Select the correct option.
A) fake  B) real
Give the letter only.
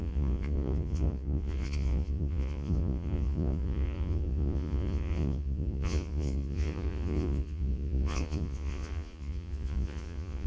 A